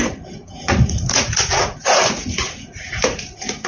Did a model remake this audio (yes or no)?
yes